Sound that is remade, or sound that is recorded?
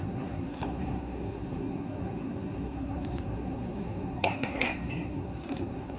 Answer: remade